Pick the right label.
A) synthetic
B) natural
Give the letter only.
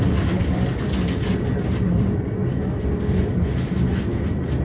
B